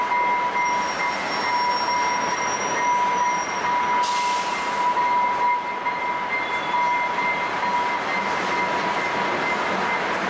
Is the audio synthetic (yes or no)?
no